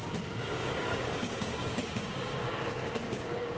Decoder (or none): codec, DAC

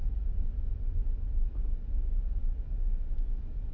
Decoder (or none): none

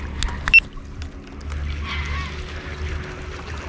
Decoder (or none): none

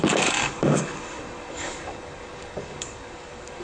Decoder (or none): codec, DAC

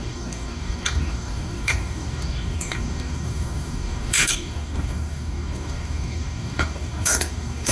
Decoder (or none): codec, DAC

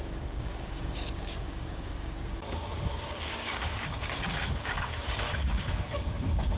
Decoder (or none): codec, DAC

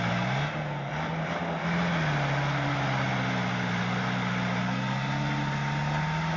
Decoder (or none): none